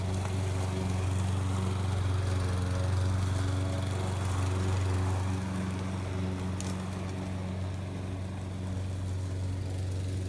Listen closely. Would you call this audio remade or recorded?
recorded